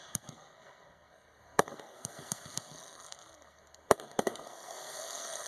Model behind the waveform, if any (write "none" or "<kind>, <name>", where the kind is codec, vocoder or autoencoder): codec, SNAC